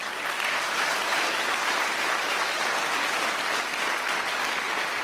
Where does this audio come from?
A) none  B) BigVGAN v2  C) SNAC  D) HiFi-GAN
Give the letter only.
A